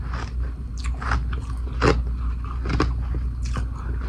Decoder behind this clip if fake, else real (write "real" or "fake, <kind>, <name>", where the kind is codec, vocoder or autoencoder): real